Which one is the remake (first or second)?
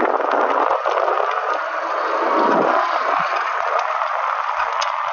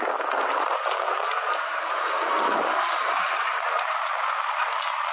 second